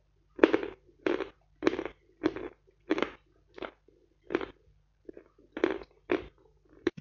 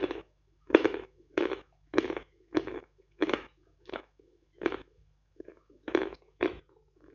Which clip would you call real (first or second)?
first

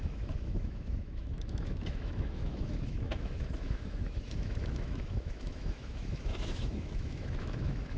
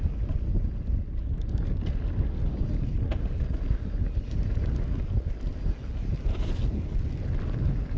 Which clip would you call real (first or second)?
second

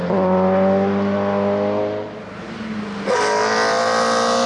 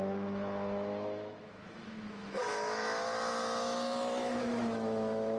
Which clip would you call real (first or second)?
first